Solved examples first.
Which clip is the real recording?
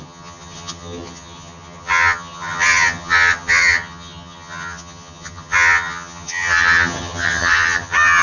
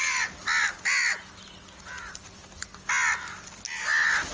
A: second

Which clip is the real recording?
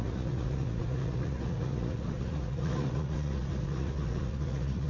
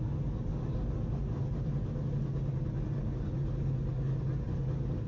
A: second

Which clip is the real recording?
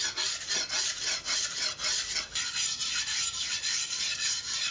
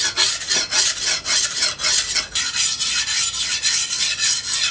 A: second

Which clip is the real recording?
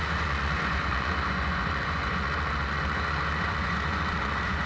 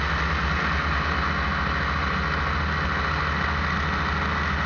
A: second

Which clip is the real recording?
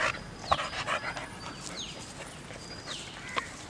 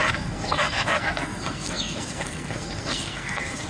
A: first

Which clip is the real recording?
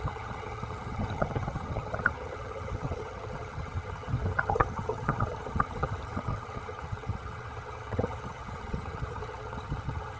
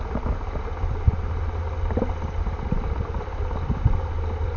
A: second